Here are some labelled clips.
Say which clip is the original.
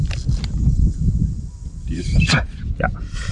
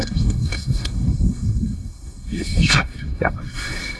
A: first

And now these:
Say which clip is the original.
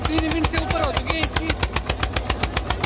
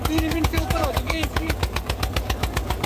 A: first